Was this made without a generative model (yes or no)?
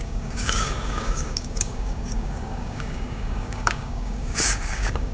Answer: no